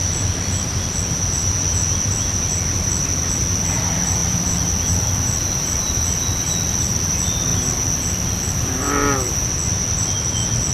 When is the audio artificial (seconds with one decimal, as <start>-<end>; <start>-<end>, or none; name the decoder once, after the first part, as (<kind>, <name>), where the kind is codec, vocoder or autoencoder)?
0.0-10.7 (vocoder, BigVGAN v2)